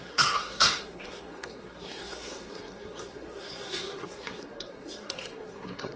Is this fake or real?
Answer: fake